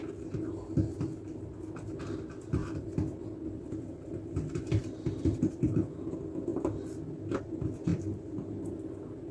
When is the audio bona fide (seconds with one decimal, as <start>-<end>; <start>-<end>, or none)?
0.0-2.6; 5.9-7.9; 8.5-9.3